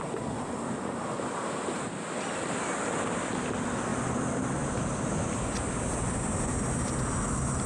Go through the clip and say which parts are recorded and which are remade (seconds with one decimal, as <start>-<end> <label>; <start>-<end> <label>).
0.0-7.7 recorded